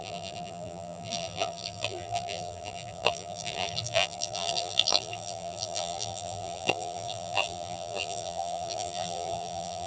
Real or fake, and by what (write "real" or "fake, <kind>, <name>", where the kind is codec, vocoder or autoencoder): fake, vocoder, BigVGAN v2